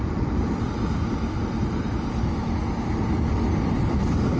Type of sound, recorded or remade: recorded